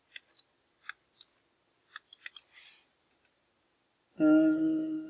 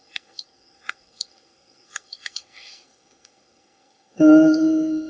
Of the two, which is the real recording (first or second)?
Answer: first